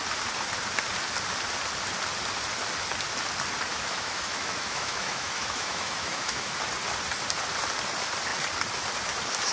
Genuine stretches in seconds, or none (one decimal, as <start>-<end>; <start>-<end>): 0.0-3.7; 6.5-9.5